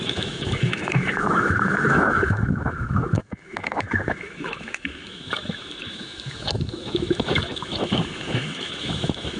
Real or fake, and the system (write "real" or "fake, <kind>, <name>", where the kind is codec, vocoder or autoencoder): fake, autoencoder, DAC-VAE